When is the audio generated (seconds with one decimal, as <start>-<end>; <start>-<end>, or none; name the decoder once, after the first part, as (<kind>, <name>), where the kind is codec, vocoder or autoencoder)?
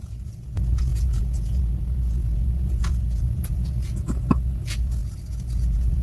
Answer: 0.0-5.0 (vocoder, Vocos); 5.5-6.0